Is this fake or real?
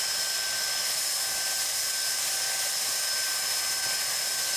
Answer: real